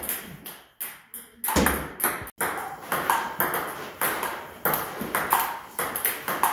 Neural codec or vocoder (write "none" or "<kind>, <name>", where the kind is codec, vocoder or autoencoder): none